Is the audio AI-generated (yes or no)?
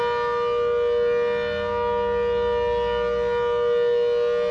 no